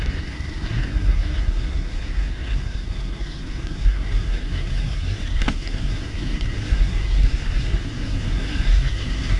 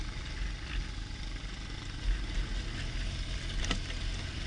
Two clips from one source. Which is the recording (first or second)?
second